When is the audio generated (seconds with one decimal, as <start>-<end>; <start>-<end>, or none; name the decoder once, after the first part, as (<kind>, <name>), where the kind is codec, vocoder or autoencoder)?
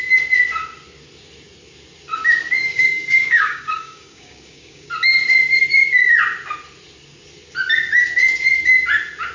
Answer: 2.6-4.9 (codec, DAC)